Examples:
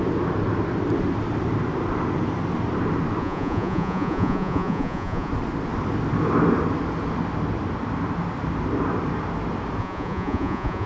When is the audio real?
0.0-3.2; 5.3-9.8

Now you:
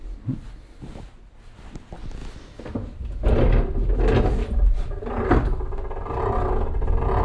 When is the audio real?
0.0-7.2

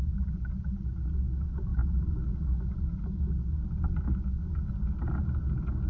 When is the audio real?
0.0-5.9

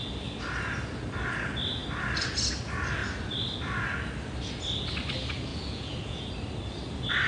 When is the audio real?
0.0-5.5; 6.3-7.3

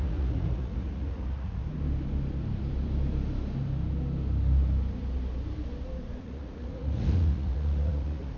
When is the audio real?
1.6-6.2